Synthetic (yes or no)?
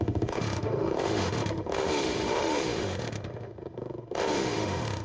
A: yes